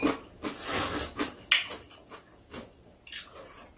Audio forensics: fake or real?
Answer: real